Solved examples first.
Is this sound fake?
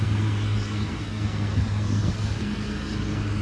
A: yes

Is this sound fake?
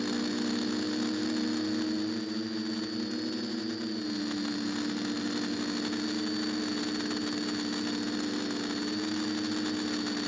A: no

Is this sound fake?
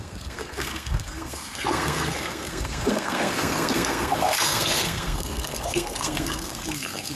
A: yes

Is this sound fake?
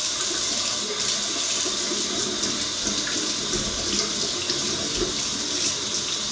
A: no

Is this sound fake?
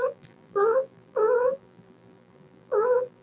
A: yes